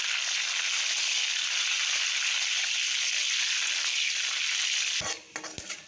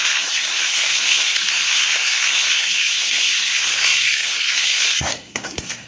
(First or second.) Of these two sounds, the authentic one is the first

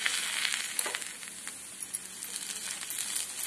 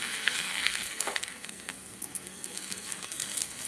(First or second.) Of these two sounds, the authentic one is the first